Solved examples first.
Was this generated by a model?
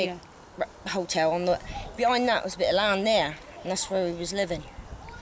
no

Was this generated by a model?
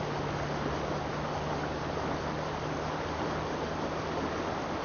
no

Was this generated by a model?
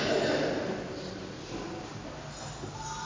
no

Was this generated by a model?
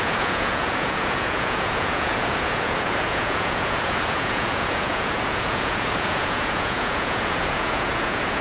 yes